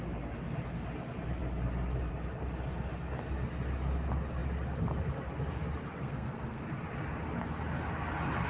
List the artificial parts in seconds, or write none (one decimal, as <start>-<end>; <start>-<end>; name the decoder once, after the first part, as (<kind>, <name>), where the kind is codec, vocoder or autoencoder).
6.0-6.6 (codec, SNAC)